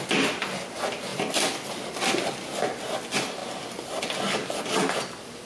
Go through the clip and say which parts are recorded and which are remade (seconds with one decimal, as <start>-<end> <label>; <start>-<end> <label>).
0.0-1.1 recorded; 1.1-1.9 remade; 1.9-5.5 recorded